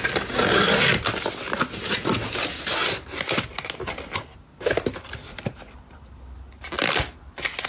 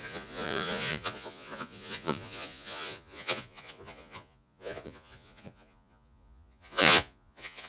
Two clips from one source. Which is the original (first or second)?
first